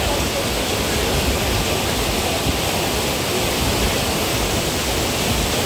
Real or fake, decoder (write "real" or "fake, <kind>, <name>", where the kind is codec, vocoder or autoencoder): real